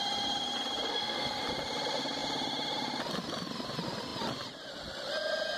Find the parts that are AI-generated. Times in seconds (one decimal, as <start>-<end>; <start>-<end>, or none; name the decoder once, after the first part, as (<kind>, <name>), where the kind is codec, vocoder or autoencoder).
0.9-1.4 (codec, SNAC)

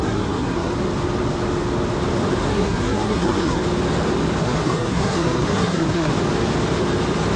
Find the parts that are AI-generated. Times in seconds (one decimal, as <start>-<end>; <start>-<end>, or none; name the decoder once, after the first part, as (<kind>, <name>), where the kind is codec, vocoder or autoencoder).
0.0-0.7 (codec, SNAC); 2.5-3.6; 4.4-6.1

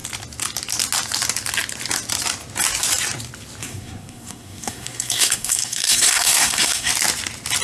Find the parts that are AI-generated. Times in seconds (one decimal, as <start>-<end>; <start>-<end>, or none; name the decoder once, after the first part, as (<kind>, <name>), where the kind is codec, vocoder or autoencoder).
3.6-6.9 (codec, SNAC)

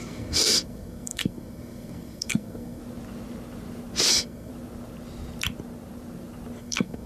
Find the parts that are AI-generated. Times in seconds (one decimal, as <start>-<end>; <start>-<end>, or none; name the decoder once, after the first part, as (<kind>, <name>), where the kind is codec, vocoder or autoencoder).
0.0-2.8 (codec, SNAC); 4.1-4.5; 6.6-7.1

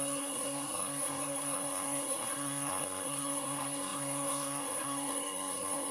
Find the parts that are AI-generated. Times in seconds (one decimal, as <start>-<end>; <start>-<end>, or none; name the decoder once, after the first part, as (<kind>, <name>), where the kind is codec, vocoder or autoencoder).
0.0-5.9 (codec, SNAC)

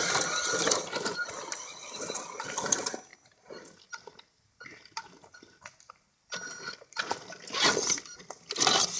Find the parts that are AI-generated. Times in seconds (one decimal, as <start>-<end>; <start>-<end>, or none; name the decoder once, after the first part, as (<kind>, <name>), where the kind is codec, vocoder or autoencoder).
none

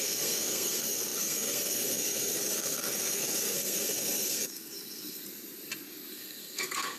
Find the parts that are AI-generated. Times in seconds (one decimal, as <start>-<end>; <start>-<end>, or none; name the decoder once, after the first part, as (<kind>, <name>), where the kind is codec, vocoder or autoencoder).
0.0-5.2 (codec, SNAC); 6.1-7.0

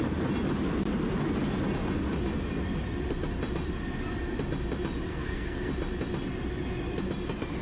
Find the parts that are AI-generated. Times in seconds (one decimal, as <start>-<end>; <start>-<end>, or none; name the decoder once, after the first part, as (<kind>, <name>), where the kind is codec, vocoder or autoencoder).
5.1-5.7 (codec, SNAC)